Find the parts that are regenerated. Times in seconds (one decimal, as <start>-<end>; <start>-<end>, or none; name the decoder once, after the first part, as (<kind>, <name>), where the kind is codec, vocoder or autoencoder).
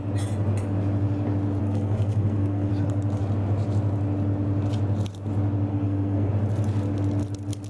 1.6-2.7 (codec, SNAC); 5.7-6.3